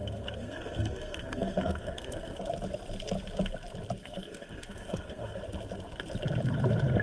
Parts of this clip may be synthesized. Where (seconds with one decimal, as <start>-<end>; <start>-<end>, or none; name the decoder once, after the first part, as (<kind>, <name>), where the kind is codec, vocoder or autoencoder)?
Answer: 0.0-2.4 (codec, SNAC); 4.0-5.4